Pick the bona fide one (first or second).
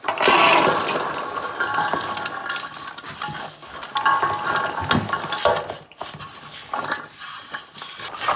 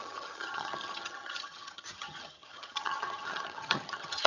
first